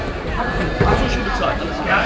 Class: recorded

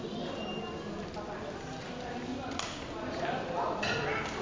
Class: recorded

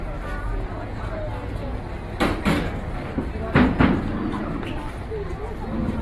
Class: recorded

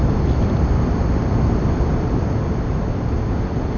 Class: recorded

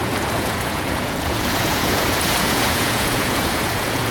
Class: remade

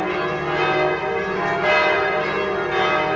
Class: recorded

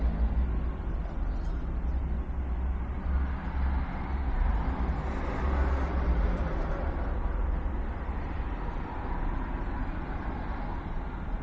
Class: recorded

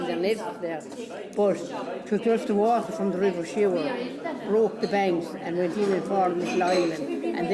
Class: recorded